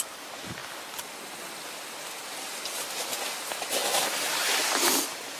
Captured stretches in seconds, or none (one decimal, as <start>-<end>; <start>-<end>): 0.6-2.2